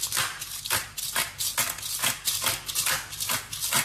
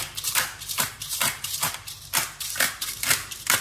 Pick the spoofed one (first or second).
second